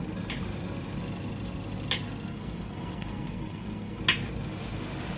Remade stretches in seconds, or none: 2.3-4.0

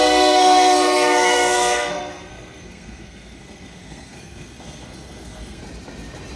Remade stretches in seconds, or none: 0.0-5.6

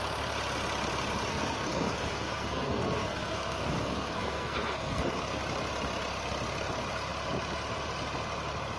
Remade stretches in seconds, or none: 1.3-5.4

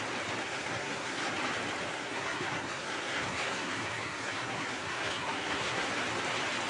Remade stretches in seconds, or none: 0.4-1.3; 1.9-5.9

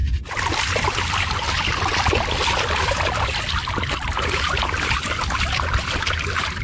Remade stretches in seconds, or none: none

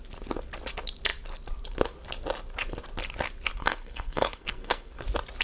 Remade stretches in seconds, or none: 3.6-5.0

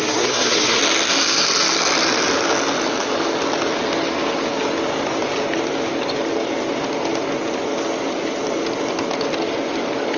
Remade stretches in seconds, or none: 0.0-0.8

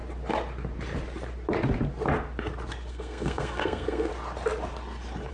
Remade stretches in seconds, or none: 2.9-4.1